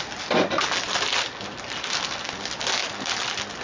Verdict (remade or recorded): recorded